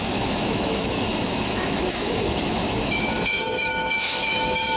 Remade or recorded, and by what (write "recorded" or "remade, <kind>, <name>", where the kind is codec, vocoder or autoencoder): remade, autoencoder, DAC-VAE